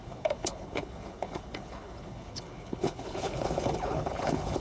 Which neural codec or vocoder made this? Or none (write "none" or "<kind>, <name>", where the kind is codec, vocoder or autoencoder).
codec, HILCodec